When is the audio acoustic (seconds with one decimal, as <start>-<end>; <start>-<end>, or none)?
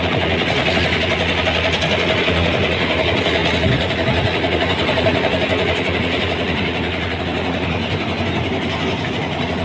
7.8-9.1